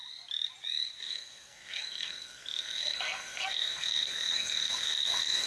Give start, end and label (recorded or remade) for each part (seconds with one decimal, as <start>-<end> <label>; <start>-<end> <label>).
0.0-1.0 recorded; 1.0-5.5 remade